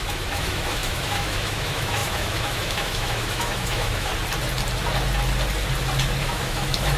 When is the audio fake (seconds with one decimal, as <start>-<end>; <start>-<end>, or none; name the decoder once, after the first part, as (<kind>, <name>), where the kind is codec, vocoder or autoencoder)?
0.0-4.1 (autoencoder, DAC-VAE); 6.2-7.0